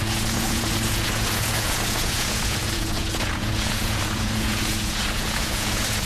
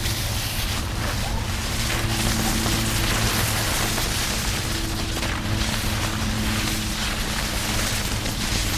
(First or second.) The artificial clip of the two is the first